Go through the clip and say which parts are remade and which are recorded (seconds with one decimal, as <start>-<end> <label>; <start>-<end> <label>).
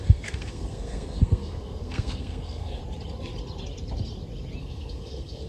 0.0-2.8 remade; 2.8-4.6 recorded; 4.6-5.5 remade